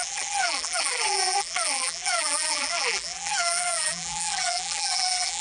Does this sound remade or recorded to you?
remade